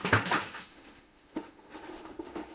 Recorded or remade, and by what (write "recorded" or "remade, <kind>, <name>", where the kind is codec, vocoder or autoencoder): remade, autoencoder, DAC-VAE